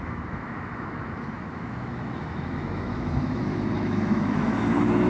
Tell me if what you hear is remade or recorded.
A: remade